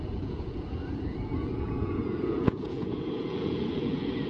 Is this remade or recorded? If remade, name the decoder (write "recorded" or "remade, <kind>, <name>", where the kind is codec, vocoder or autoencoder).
remade, vocoder, Vocos